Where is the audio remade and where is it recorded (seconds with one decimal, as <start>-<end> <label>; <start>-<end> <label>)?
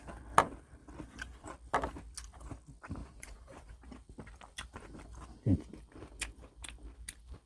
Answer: 0.0-3.0 recorded; 3.0-3.7 remade; 3.7-7.5 recorded